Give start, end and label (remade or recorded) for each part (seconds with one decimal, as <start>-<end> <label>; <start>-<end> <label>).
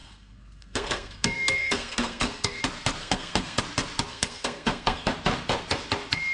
0.0-2.6 remade; 2.6-3.0 recorded; 3.0-3.6 remade; 3.6-4.1 recorded; 4.1-5.1 remade; 5.1-6.3 recorded